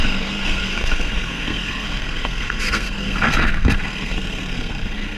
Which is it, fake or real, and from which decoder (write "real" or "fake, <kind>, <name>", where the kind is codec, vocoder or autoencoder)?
fake, codec, SNAC